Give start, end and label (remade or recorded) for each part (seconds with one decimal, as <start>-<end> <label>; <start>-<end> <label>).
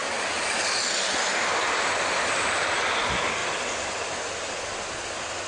0.0-5.5 recorded